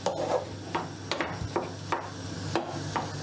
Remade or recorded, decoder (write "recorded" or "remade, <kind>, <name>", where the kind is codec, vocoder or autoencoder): recorded